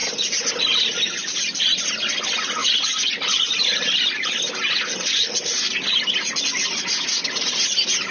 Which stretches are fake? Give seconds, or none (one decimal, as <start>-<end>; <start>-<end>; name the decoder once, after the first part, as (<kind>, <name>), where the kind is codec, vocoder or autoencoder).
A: none